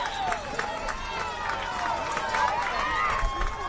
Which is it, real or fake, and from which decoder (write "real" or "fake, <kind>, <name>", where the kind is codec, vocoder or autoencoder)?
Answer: real